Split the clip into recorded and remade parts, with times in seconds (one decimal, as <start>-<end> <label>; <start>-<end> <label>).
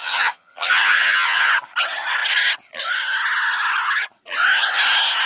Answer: 0.0-1.5 remade; 1.5-5.3 recorded